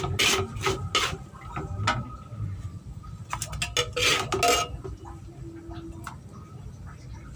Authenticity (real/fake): real